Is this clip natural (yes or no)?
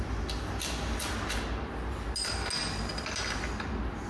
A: yes